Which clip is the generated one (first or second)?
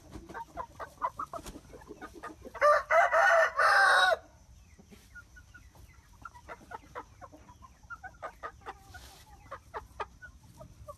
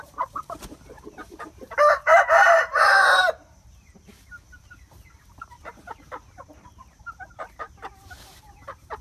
second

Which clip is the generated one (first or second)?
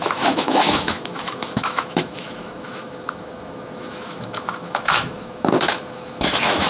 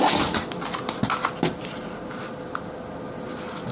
first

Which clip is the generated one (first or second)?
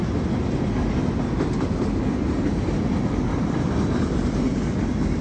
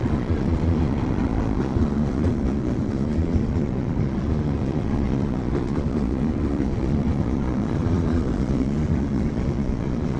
second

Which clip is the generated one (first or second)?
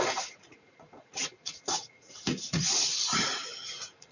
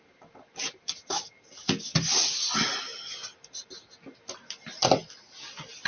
first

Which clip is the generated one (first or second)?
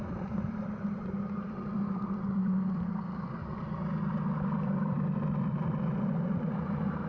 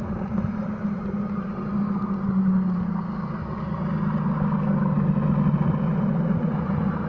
first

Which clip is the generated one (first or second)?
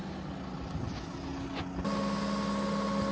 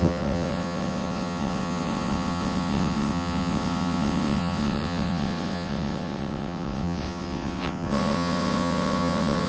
second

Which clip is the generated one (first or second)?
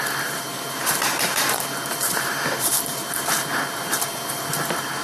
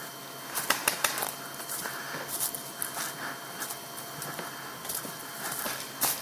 first